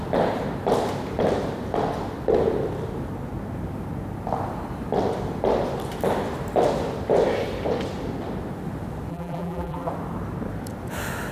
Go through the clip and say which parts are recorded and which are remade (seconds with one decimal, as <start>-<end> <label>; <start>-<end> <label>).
0.0-9.1 recorded; 9.1-9.9 remade; 9.9-11.3 recorded